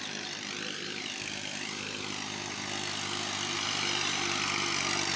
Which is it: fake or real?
real